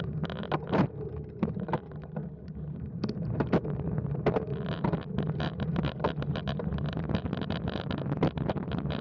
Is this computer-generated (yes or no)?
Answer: yes